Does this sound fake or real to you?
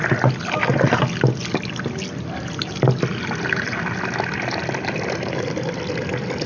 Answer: real